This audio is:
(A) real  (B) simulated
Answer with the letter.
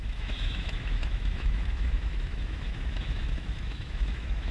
B